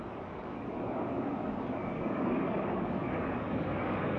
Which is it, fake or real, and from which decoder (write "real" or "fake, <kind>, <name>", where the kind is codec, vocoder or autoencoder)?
fake, codec, DAC